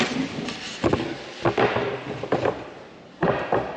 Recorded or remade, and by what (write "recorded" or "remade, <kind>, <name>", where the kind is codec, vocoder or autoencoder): recorded